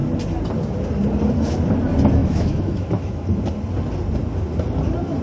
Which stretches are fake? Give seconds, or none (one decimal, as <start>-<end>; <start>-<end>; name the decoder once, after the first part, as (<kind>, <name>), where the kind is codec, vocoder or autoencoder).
2.2-3.4 (autoencoder, DAC-VAE)